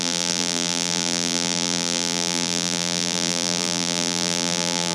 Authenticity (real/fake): fake